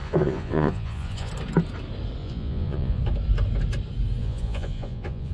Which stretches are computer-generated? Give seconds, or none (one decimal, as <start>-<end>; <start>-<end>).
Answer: 0.0-1.3; 2.2-3.0; 4.2-5.3

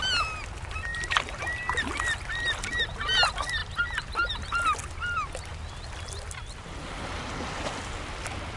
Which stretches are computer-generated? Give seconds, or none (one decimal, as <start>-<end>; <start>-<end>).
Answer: none

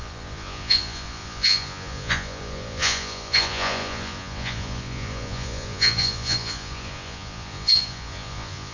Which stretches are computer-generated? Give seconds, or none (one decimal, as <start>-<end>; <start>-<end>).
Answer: 0.0-8.7

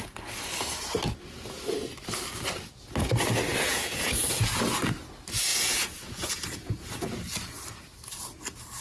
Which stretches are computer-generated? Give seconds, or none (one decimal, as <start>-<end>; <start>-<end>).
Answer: 3.5-4.6; 5.5-7.2

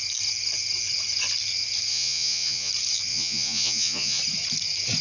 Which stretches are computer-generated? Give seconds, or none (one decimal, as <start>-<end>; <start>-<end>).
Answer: 1.9-2.7; 3.1-4.2

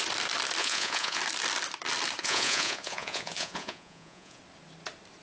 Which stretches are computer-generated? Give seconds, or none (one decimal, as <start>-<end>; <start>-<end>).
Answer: 0.6-1.2; 2.2-4.4

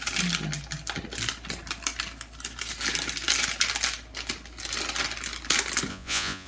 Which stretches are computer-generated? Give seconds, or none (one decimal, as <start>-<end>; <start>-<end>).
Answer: 5.9-6.5